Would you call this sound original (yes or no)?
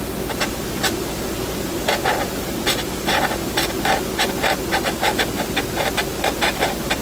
yes